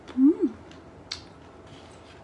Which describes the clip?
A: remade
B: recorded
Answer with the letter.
B